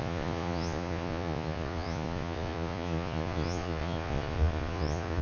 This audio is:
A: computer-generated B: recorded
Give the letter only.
A